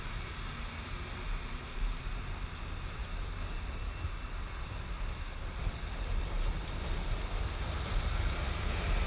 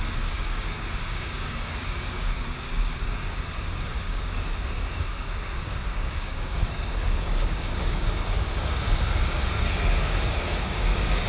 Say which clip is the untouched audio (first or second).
first